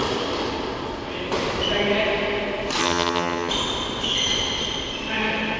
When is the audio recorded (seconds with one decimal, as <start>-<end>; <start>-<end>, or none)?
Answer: 0.0-2.8; 3.5-5.6